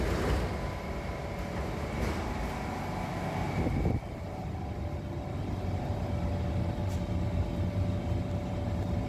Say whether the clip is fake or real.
real